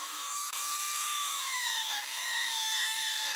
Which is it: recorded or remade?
remade